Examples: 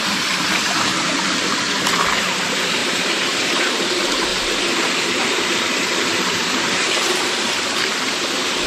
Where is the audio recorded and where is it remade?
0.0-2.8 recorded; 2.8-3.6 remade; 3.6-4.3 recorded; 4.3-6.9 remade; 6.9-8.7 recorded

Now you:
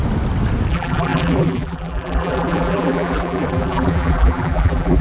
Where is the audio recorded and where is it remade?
0.0-0.7 recorded; 0.7-5.0 remade

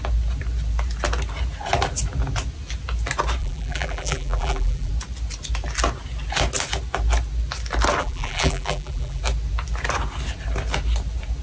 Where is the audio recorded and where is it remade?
0.0-3.4 recorded; 3.4-4.9 remade; 4.9-8.0 recorded; 8.0-9.2 remade; 9.2-11.4 recorded

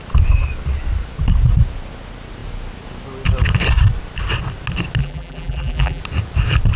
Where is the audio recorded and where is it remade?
0.0-5.0 recorded; 5.0-6.0 remade; 6.0-6.8 recorded

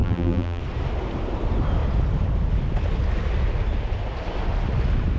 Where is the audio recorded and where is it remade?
0.0-0.6 remade; 0.6-5.2 recorded

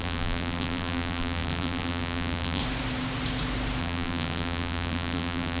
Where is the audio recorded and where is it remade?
0.0-2.6 remade; 2.6-3.8 recorded; 3.8-5.6 remade

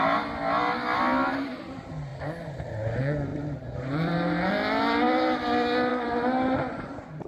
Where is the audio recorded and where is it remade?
0.0-3.3 recorded; 3.3-4.5 remade; 4.5-5.9 recorded; 5.9-7.3 remade

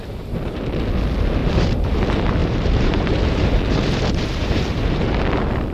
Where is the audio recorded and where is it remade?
0.0-1.4 recorded; 1.4-2.0 remade; 2.0-2.4 recorded; 2.4-5.2 remade; 5.2-5.7 recorded